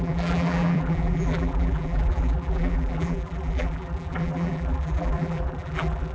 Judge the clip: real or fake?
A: fake